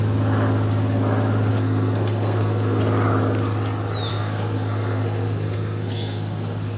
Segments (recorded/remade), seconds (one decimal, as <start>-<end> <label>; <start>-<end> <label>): 0.0-1.5 recorded; 1.5-2.8 remade; 2.8-4.1 recorded; 4.1-6.8 remade